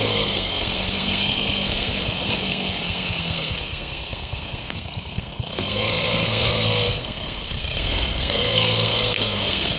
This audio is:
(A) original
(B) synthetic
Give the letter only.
B